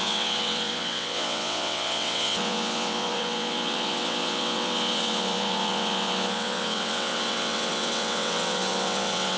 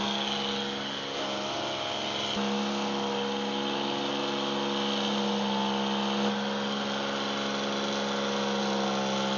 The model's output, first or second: first